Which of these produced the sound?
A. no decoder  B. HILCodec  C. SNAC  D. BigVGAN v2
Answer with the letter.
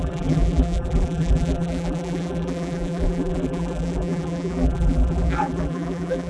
D